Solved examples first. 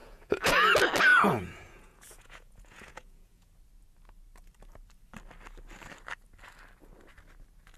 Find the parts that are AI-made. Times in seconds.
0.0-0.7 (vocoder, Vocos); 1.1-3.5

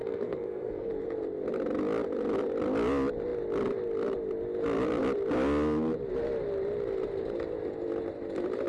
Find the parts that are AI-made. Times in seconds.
0.0-0.9 (codec, SNAC)

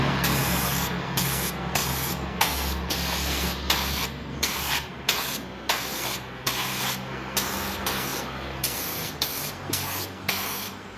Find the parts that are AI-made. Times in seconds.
0.0-11.0 (codec, SNAC)